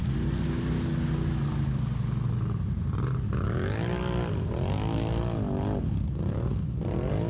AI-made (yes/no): no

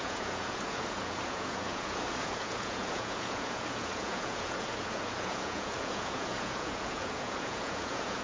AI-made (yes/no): yes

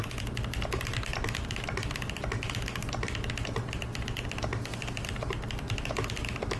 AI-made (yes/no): no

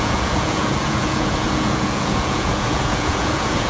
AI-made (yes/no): yes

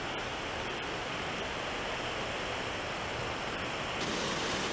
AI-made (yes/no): no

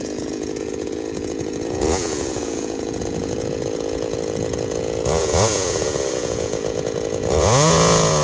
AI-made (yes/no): yes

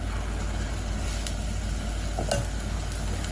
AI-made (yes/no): no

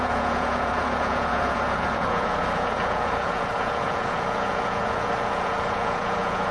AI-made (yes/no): yes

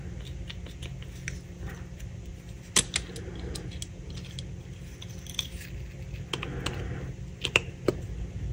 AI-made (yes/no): no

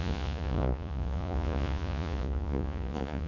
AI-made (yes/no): yes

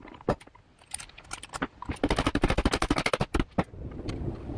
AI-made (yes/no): no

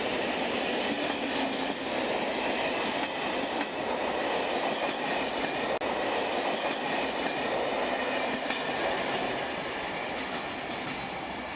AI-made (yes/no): no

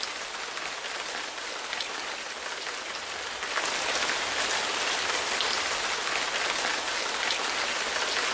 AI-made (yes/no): no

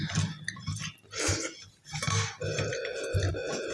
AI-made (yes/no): no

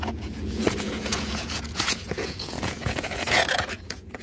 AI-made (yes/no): yes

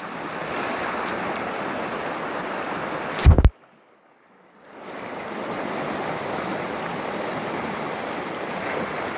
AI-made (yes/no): no